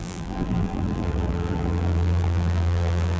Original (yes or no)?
no